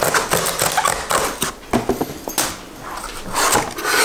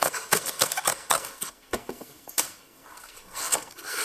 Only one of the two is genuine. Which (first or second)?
first